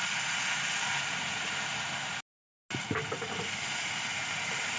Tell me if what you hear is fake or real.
real